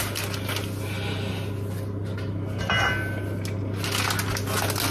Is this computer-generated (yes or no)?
no